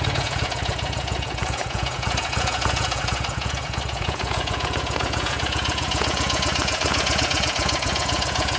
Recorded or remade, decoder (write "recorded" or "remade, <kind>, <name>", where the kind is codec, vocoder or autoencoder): remade, vocoder, Vocos